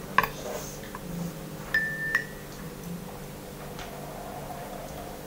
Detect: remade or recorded recorded